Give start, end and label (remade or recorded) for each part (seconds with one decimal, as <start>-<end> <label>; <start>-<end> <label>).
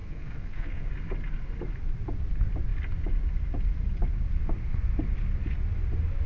0.0-0.9 remade; 0.9-6.3 recorded